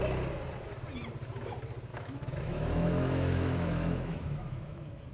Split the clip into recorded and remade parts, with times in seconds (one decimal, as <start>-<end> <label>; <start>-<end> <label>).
0.0-1.9 recorded; 1.9-5.1 remade